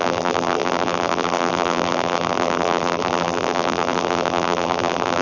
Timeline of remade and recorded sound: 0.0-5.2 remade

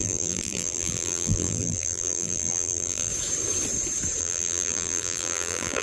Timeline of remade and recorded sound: 0.0-3.1 remade; 3.1-4.2 recorded; 4.2-5.8 remade